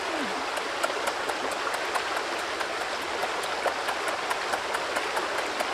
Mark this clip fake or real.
real